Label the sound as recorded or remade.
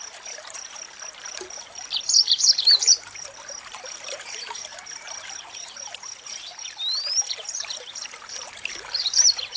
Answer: remade